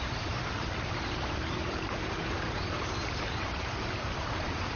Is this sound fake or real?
fake